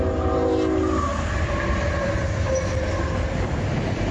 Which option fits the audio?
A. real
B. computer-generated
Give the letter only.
A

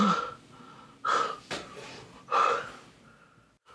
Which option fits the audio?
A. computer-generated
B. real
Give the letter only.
B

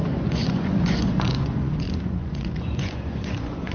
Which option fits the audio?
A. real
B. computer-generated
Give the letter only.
B